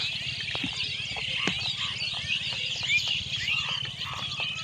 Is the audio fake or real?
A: real